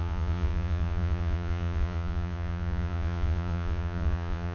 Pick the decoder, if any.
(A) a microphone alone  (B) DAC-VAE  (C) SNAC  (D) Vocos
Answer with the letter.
D